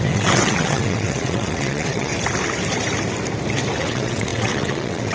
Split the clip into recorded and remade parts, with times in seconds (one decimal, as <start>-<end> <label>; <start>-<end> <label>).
0.0-2.1 remade; 2.1-3.8 recorded; 3.8-5.1 remade